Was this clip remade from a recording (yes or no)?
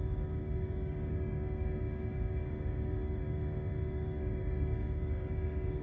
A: yes